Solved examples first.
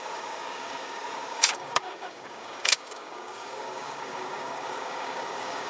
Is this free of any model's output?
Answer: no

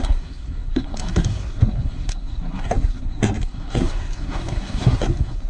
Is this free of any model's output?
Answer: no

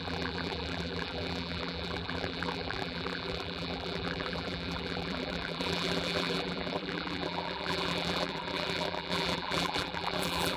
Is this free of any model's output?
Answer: no